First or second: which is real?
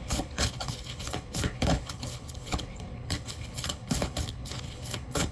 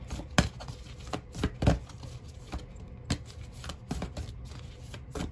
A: second